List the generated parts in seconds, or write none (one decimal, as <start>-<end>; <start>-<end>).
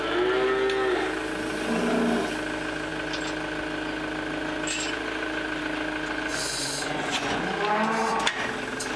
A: 6.3-7.4